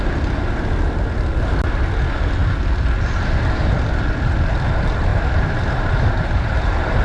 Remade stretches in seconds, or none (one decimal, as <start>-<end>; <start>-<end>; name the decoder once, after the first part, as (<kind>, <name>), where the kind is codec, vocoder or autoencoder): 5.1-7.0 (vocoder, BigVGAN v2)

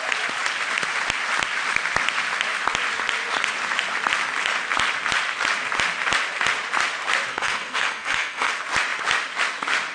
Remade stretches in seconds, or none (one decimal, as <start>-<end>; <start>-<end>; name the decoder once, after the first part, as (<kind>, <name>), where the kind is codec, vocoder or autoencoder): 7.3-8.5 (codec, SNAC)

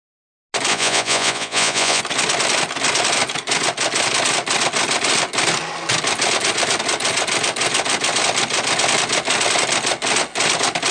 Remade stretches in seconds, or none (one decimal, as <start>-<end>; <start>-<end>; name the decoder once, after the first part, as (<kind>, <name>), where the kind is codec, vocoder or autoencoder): 0.7-2.0 (vocoder, Vocos)

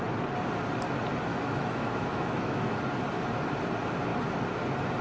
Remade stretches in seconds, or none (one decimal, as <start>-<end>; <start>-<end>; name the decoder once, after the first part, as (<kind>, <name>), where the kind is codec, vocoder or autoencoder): 1.3-2.8 (autoencoder, DAC-VAE)

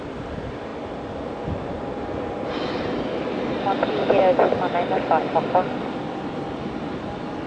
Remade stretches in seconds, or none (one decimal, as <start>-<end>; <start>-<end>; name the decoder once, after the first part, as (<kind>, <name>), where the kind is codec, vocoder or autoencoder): none